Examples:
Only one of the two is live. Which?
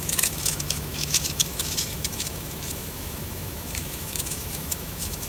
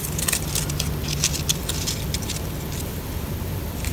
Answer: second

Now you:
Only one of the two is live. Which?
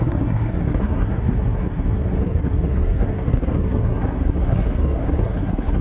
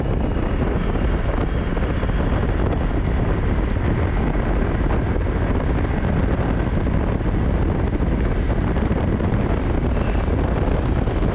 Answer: second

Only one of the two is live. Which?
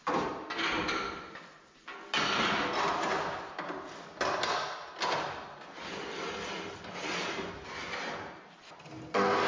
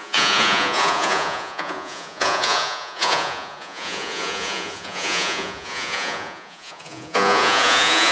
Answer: first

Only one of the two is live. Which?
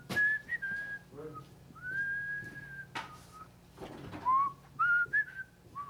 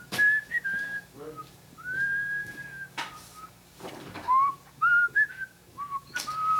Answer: first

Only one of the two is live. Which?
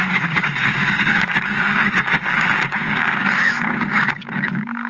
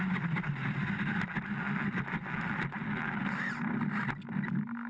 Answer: second